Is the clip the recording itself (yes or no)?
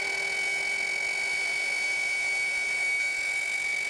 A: yes